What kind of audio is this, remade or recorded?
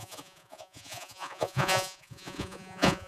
remade